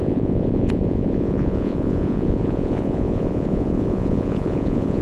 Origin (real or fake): fake